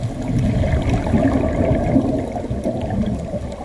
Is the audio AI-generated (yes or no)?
no